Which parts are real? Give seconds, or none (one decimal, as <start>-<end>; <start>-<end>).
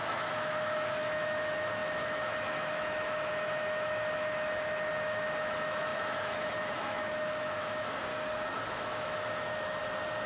8.1-8.7; 9.8-10.3